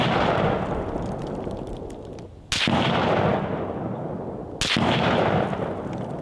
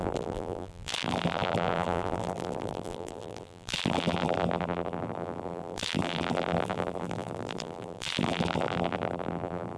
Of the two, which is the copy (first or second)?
second